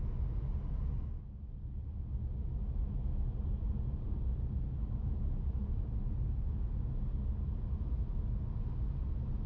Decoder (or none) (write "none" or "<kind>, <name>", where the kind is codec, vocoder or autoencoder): none